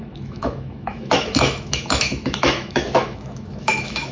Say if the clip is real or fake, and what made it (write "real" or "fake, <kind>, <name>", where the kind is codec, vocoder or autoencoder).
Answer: fake, autoencoder, DAC-VAE